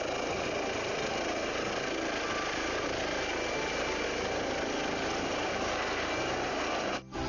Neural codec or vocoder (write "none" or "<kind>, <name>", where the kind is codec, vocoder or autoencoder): none